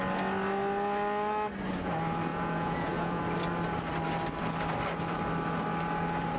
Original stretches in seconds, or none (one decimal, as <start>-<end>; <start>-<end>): 0.0-2.3; 3.2-6.4